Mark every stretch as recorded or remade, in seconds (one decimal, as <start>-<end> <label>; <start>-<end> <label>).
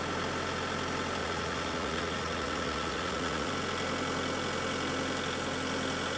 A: 0.0-1.2 recorded; 1.2-3.5 remade; 3.5-6.2 recorded